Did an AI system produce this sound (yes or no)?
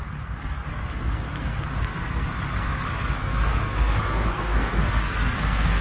yes